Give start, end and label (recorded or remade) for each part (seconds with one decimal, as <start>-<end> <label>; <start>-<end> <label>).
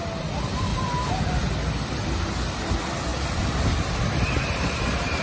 0.0-5.2 recorded